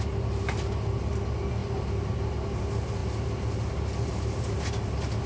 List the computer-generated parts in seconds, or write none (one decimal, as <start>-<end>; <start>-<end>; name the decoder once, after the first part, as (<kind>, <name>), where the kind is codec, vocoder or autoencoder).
none